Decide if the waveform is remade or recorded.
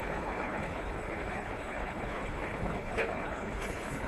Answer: remade